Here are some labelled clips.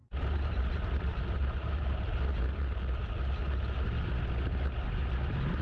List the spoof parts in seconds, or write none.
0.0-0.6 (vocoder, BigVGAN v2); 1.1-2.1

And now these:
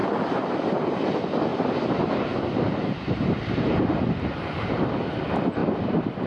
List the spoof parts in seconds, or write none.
0.0-0.9 (vocoder, BigVGAN v2); 1.5-5.1

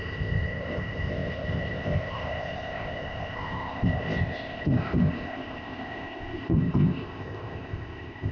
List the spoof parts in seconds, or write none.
0.0-8.3 (codec, ZipCodec)

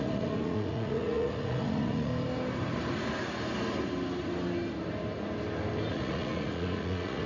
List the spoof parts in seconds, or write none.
0.0-2.1 (vocoder, Vocos); 5.9-7.3

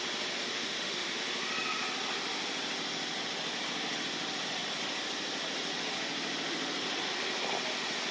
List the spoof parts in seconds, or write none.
0.4-1.2 (autoencoder, DAC-VAE)

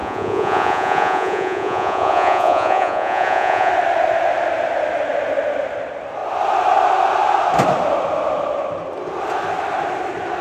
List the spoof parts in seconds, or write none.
0.0-3.7 (vocoder, Vocos)